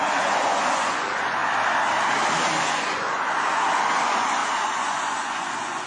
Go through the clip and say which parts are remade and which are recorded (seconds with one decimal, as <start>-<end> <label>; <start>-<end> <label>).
0.0-1.4 remade; 1.4-2.6 recorded; 2.6-5.9 remade